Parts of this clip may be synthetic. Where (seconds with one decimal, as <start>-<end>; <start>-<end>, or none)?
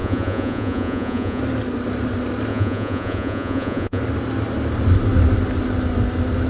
0.0-1.4; 2.5-4.0